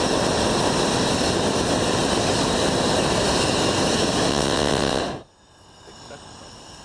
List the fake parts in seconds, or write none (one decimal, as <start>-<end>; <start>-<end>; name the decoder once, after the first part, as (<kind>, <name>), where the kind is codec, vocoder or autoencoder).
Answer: 4.3-5.0 (vocoder, WaveNeXt)